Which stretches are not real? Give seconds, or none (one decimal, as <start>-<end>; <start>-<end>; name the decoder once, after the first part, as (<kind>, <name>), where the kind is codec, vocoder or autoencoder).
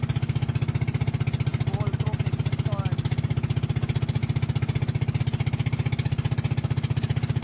none